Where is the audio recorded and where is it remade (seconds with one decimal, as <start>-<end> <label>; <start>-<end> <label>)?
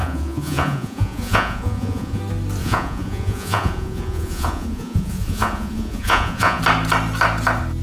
0.0-2.2 remade; 2.2-2.6 recorded; 2.6-6.6 remade; 6.6-7.8 recorded